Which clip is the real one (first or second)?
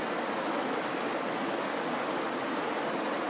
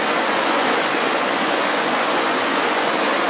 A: first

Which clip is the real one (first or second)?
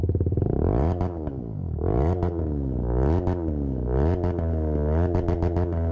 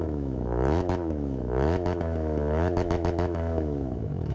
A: first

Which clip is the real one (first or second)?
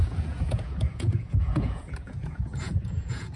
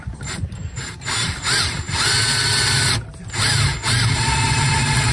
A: second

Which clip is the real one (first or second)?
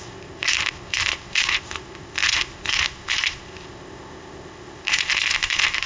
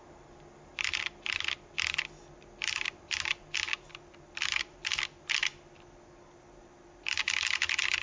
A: second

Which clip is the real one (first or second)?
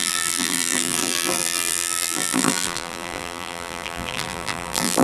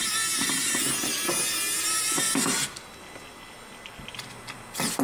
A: second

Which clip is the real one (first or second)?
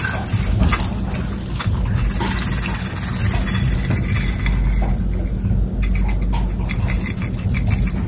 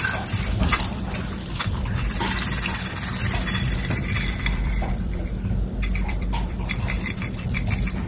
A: first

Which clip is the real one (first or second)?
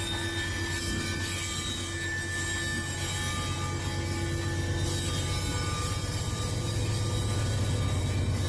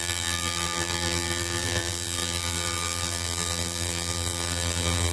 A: first